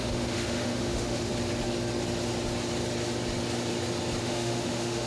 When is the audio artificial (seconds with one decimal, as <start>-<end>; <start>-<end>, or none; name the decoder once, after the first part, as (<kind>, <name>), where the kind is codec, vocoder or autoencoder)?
0.0-1.3 (autoencoder, DAC-VAE); 4.2-5.1